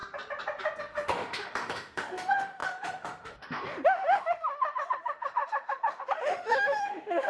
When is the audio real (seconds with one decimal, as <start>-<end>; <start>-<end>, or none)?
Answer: 0.0-0.8